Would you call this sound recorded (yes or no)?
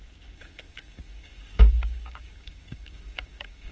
no